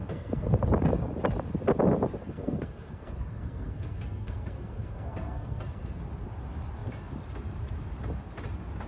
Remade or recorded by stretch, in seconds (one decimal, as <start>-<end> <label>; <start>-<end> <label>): 0.0-0.5 remade; 0.5-2.2 recorded; 2.2-6.0 remade; 6.0-8.9 recorded